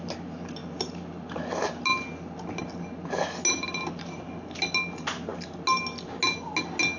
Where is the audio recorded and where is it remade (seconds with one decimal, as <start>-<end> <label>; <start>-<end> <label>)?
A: 0.0-7.0 recorded